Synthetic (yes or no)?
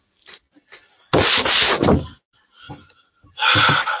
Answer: no